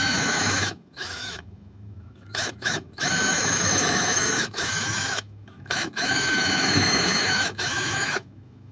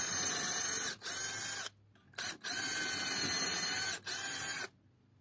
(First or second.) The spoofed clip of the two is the first